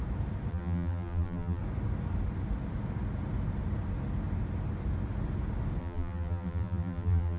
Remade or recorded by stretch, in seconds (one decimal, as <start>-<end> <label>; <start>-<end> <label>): 0.0-0.5 recorded; 0.5-1.6 remade; 1.6-5.8 recorded; 5.8-7.4 remade